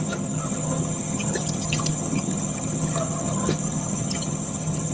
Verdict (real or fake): fake